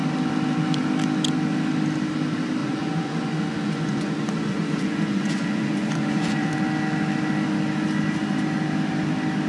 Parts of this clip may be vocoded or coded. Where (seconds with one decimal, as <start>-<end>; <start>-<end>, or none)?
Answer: 2.6-6.5